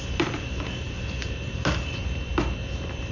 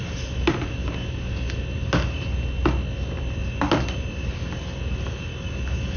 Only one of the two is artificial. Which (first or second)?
first